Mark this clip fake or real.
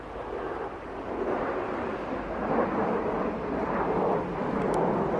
real